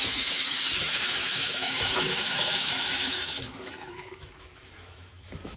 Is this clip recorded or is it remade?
remade